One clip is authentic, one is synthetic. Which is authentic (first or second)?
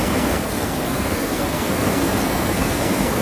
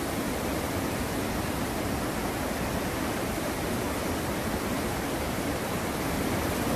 second